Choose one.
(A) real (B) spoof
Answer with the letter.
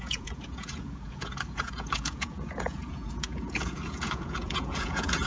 B